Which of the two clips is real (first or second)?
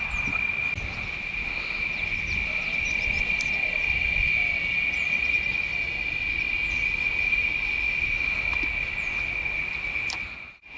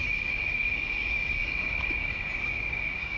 first